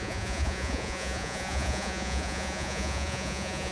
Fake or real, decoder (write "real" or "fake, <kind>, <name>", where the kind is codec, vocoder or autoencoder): fake, vocoder, Vocos